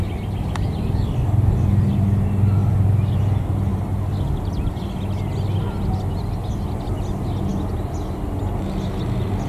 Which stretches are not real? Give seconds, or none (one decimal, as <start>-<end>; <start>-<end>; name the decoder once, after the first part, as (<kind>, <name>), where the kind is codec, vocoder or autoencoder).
none